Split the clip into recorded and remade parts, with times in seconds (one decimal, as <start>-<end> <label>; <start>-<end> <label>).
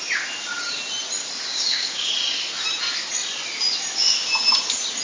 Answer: 0.0-1.5 recorded; 1.5-2.1 remade; 2.1-5.0 recorded